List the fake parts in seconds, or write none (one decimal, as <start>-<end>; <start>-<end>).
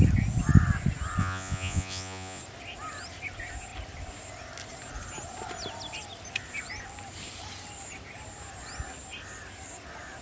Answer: 1.2-2.4